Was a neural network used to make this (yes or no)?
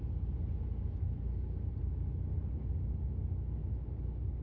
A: no